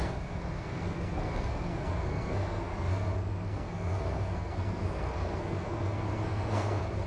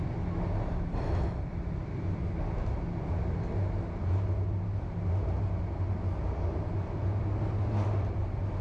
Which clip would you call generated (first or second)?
first